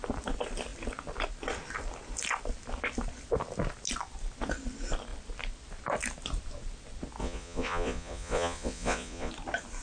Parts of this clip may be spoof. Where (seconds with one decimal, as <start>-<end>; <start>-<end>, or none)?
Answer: 7.2-9.3